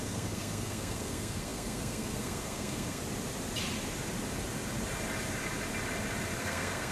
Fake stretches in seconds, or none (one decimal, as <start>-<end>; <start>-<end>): 0.0-3.0; 6.4-6.9